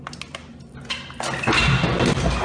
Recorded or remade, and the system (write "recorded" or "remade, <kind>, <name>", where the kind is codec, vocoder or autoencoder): recorded